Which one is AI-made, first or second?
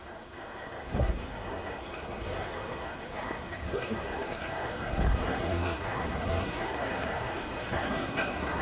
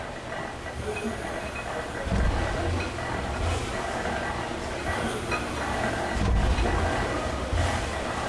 first